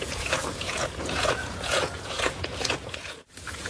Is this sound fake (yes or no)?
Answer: yes